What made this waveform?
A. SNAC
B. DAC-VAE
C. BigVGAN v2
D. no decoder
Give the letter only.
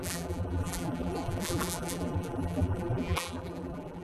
C